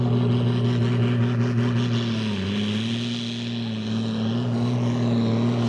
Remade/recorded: recorded